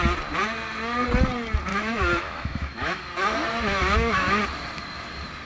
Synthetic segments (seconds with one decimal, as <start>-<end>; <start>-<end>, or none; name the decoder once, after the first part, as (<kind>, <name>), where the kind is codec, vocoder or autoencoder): 1.7-3.0 (autoencoder, DAC-VAE); 3.8-4.4